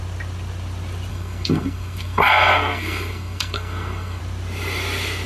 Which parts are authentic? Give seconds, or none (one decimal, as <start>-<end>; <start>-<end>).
0.0-1.1; 4.2-5.3